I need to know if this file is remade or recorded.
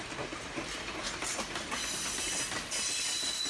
recorded